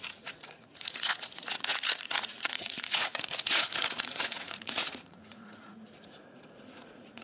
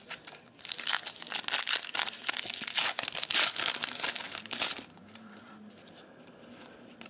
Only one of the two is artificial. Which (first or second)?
first